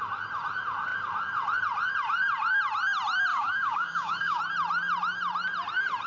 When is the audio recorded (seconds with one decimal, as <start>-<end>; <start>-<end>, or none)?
0.0-3.3; 4.4-6.1